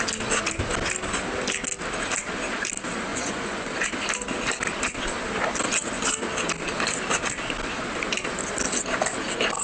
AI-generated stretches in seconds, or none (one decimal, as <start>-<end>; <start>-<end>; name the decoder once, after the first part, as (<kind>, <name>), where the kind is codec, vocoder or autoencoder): 3.1-3.7 (vocoder, Vocos)